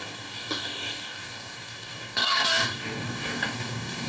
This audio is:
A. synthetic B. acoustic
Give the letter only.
A